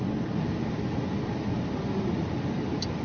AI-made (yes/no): no